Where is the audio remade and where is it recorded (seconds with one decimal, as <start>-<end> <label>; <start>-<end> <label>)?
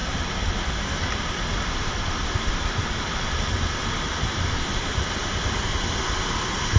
0.0-6.8 recorded